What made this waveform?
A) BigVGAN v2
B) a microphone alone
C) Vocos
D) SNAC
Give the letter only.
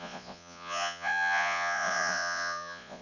C